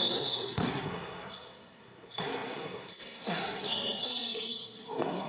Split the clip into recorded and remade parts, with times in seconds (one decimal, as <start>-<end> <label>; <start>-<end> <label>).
0.0-5.3 remade